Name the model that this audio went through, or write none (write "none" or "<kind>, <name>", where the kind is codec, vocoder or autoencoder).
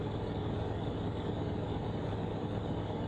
codec, DAC